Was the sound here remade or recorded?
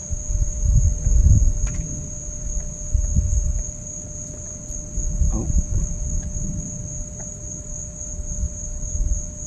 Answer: recorded